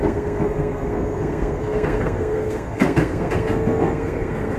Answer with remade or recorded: remade